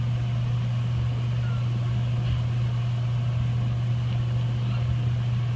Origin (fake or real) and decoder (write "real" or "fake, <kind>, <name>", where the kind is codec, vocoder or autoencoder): real